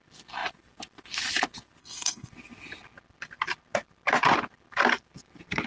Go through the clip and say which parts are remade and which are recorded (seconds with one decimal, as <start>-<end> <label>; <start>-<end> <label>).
0.0-1.8 recorded; 1.8-2.3 remade; 2.3-5.7 recorded